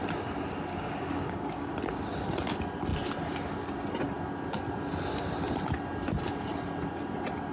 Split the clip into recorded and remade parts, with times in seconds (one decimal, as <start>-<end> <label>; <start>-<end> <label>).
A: 0.0-0.7 recorded; 0.7-1.7 remade; 1.7-7.5 recorded